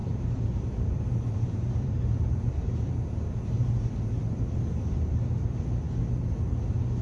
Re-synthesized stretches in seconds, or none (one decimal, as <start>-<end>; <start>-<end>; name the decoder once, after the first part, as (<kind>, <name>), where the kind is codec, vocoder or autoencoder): 0.0-4.2 (vocoder, BigVGAN v2)